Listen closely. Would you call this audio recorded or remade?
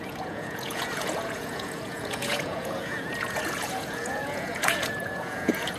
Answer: remade